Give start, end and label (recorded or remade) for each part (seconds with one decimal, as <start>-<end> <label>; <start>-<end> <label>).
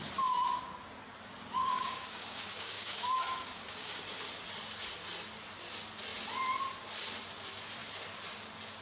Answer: 0.0-1.6 recorded; 1.6-4.0 remade; 4.0-8.8 recorded